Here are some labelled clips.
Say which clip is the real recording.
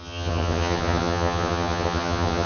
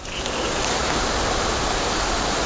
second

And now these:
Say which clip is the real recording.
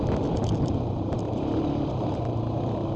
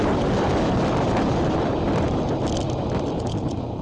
second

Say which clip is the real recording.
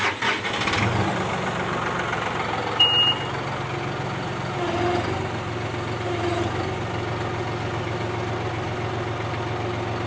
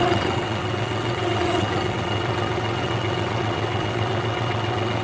first